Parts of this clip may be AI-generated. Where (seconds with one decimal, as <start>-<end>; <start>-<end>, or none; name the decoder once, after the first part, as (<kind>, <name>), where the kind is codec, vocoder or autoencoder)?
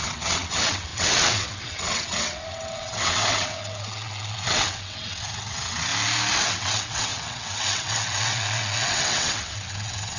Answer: 0.0-5.9 (vocoder, WaveNeXt); 6.4-10.2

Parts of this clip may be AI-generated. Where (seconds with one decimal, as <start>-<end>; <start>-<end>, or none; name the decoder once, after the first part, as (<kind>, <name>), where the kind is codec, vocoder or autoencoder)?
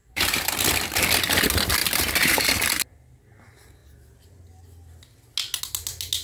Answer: 0.0-0.5 (vocoder, BigVGAN v2); 1.8-2.5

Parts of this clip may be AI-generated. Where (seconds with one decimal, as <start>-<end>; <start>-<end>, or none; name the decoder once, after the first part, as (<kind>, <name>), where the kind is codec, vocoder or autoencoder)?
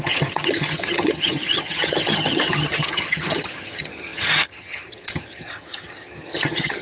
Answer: 0.0-6.8 (vocoder, HiFi-GAN)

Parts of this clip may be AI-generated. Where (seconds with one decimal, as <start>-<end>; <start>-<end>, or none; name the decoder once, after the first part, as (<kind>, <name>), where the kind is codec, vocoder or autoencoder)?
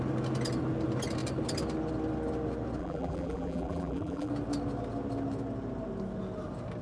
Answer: 2.8-4.3 (vocoder, BigVGAN v2)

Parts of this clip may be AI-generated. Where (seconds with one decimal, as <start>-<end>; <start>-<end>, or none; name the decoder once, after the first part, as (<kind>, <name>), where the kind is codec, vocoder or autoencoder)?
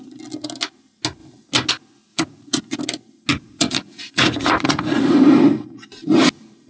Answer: 2.1-2.8 (vocoder, Vocos); 3.3-5.0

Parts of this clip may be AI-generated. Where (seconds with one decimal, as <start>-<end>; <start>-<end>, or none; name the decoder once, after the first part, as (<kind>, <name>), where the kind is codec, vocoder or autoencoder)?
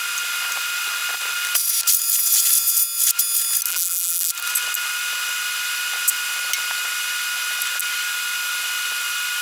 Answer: 3.7-4.3 (vocoder, BigVGAN v2)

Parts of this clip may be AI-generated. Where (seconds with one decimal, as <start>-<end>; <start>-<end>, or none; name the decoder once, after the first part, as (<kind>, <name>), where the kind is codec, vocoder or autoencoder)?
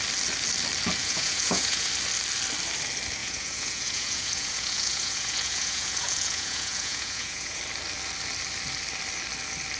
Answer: 1.0-1.9 (vocoder, Vocos); 3.2-7.6